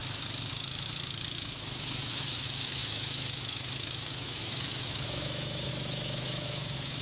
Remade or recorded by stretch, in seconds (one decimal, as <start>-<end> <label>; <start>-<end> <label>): 0.0-0.5 recorded; 0.5-7.0 remade